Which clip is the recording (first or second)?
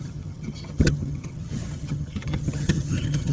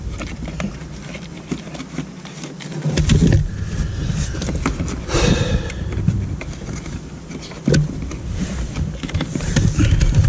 second